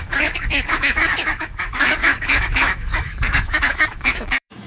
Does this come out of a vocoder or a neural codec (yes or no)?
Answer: yes